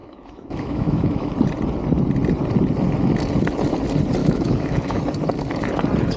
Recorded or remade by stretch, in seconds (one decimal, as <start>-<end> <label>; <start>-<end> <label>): 0.0-1.3 remade; 1.3-4.2 recorded; 4.2-5.0 remade; 5.0-6.2 recorded